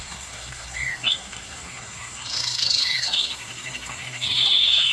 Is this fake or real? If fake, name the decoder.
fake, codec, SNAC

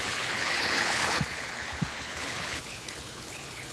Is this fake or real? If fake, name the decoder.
fake, codec, HILCodec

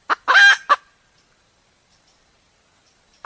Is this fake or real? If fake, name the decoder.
real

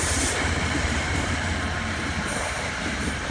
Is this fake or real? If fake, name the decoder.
fake, vocoder, BigVGAN v2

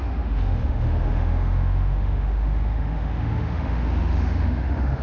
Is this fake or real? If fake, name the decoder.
fake, autoencoder, DAC-VAE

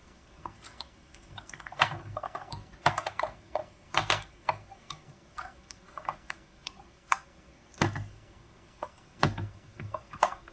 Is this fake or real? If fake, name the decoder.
fake, codec, SNAC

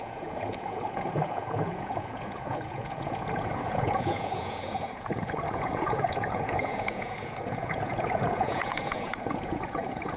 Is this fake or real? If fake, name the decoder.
fake, vocoder, Vocos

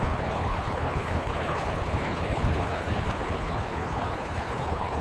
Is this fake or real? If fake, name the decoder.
fake, codec, HILCodec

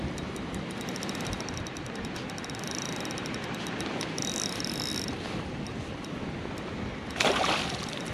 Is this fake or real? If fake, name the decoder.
real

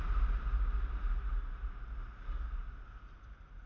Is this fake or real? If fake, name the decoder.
real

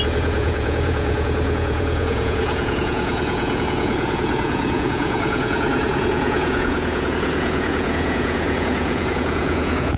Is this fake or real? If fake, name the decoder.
fake, vocoder, Vocos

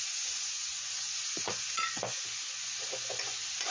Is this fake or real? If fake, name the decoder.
fake, vocoder, Vocos